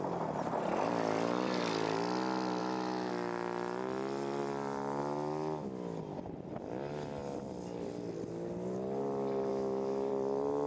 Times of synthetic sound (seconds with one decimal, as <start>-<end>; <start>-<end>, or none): 2.6-3.1; 9.5-10.1

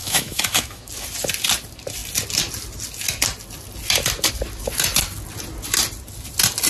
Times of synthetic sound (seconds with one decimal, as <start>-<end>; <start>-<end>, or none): 0.0-0.9

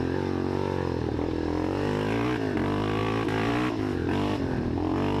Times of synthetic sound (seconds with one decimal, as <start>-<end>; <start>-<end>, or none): none

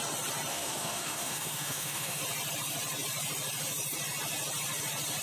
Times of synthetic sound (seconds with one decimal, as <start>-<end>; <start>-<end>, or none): 0.5-2.2

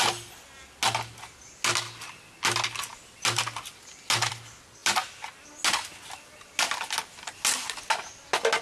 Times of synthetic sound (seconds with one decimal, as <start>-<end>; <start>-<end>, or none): none

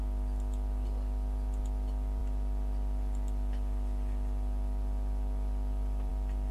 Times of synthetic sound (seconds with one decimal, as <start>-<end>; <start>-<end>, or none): none

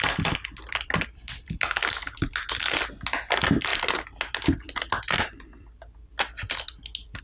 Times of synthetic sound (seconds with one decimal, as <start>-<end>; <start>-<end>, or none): none

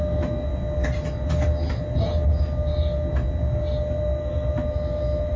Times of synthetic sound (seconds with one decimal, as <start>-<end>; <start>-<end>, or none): 0.0-0.5; 2.3-2.7; 4.0-5.4